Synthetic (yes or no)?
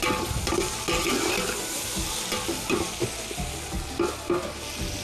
no